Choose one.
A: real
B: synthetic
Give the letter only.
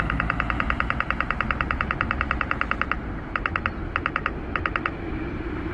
A